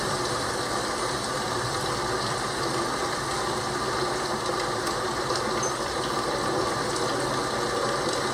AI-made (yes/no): no